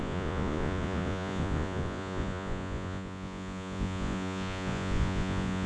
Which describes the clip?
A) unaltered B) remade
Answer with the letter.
B